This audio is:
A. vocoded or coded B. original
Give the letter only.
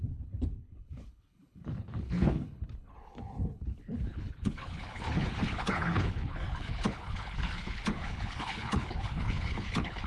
A